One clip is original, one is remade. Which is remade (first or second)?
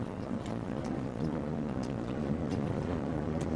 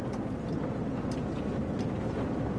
first